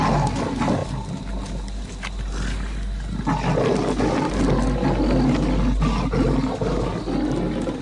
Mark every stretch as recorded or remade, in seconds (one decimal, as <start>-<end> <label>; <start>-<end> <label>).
0.0-7.8 recorded